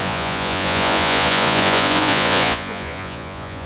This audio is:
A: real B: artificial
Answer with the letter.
B